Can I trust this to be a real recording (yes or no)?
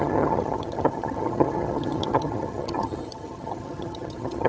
no